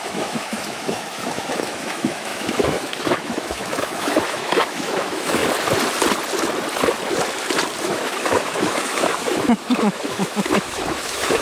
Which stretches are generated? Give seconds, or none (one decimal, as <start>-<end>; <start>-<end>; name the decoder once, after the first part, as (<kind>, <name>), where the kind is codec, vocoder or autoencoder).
0.0-5.4 (autoencoder, DAC-VAE); 7.8-11.4